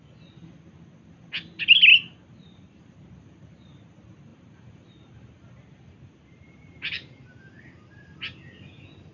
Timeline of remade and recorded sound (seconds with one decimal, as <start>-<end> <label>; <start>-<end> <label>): 0.0-1.9 recorded; 1.9-2.8 remade; 2.8-4.3 recorded; 4.3-7.4 remade; 7.4-9.1 recorded